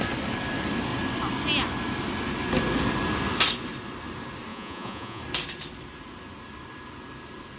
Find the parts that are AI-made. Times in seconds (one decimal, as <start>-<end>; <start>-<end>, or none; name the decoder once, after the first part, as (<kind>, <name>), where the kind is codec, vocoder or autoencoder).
4.5-5.2 (vocoder, Vocos)